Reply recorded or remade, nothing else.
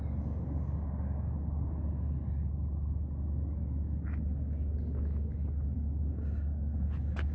recorded